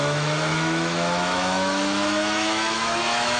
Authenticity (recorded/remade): remade